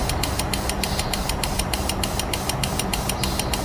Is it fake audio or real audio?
fake